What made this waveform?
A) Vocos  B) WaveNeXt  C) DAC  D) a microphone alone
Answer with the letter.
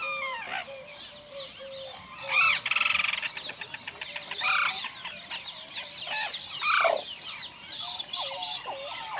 D